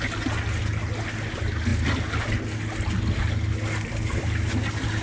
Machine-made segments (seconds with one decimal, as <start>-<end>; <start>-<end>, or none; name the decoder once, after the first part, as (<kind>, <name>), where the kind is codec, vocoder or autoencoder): none